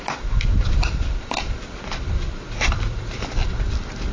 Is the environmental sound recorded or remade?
remade